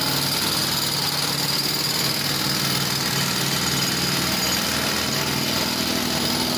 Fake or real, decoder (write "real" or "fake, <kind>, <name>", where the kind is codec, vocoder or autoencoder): real